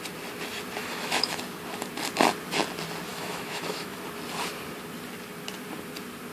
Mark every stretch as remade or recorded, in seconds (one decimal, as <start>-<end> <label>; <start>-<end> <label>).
0.0-0.8 recorded; 0.8-1.4 remade; 1.4-3.1 recorded; 3.1-4.0 remade; 4.0-6.3 recorded